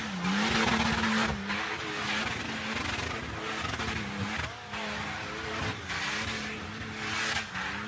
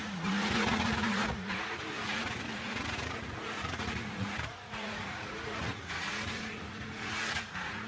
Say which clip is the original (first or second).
first